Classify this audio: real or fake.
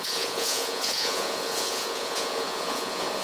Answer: fake